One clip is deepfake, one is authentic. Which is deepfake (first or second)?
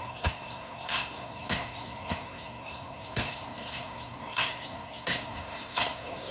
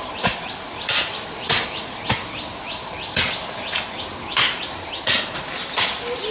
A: first